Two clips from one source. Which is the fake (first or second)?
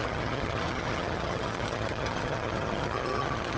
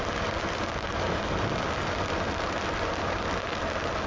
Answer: first